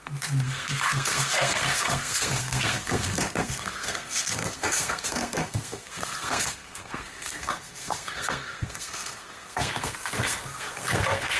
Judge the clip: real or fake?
fake